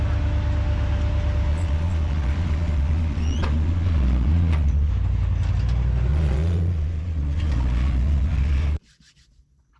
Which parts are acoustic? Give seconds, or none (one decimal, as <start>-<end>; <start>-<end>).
0.0-1.5; 4.9-6.1